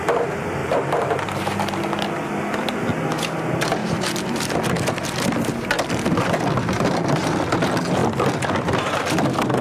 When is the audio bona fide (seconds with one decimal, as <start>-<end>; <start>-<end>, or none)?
0.0-0.6; 1.8-3.8; 4.7-9.6